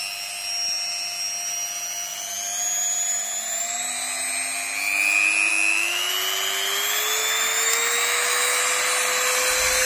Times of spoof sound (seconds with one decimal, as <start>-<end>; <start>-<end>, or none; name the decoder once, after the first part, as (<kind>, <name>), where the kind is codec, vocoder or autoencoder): 5.5-6.1 (autoencoder, DAC-VAE); 7.2-8.6